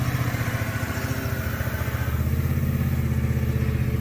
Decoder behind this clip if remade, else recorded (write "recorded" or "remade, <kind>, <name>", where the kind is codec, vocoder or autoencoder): recorded